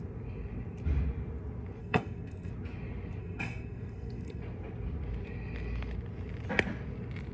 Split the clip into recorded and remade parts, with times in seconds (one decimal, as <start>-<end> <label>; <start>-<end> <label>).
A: 0.0-1.8 recorded; 1.8-2.5 remade; 2.5-3.2 recorded; 3.2-4.4 remade; 4.4-7.3 recorded